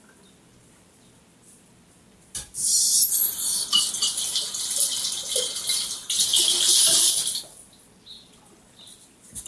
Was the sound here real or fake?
real